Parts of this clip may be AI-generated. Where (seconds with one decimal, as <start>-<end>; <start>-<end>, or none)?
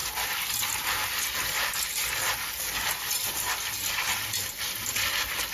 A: none